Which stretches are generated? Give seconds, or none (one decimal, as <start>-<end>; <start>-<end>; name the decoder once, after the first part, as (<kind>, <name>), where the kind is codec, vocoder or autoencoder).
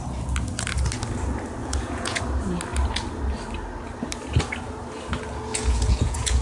1.6-2.2 (vocoder, Vocos); 5.5-6.4